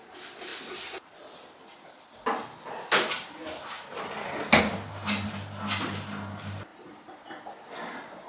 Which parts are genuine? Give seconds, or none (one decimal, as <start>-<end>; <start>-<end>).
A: 0.0-8.3